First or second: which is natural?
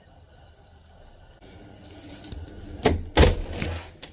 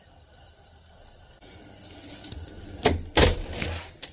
first